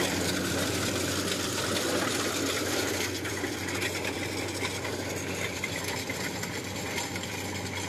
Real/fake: fake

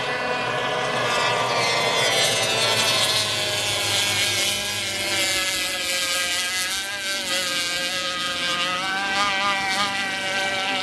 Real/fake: real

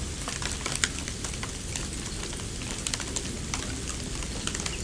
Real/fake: real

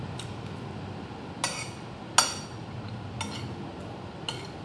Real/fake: real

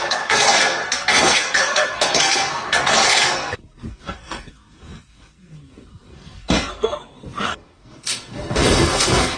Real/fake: fake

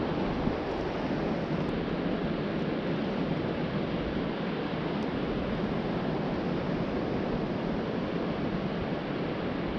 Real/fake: real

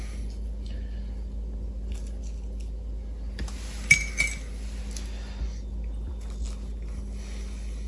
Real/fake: real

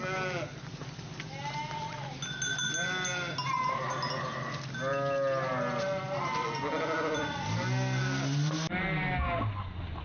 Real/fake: real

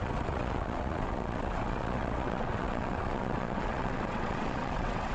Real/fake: fake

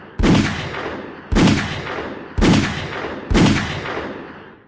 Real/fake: real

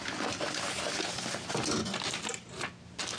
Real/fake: real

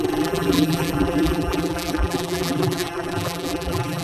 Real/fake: fake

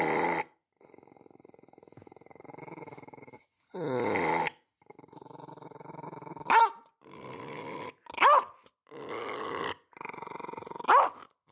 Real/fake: real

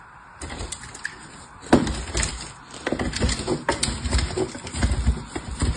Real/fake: real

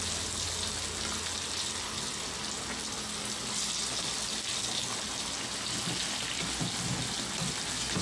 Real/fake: real